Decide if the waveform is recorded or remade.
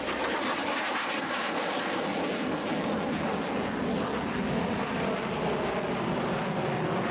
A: recorded